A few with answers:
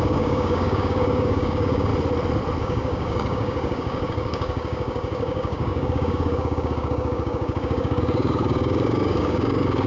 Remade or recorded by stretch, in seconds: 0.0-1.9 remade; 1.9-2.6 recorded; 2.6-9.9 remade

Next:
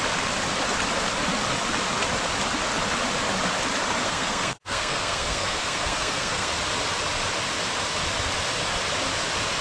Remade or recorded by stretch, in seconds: 0.0-4.0 recorded; 4.0-6.5 remade; 6.5-9.6 recorded

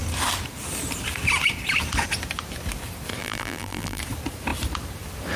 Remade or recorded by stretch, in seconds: 0.0-3.2 recorded; 3.2-4.0 remade; 4.0-5.4 recorded

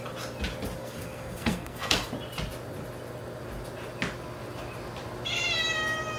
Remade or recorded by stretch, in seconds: 0.0-0.8 recorded; 0.8-2.1 remade; 2.1-6.2 recorded